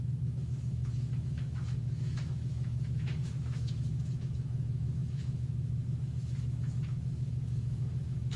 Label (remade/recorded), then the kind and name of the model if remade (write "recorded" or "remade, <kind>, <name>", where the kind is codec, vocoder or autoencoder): remade, autoencoder, DAC-VAE